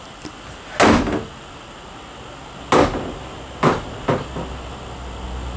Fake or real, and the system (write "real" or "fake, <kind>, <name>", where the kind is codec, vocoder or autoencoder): real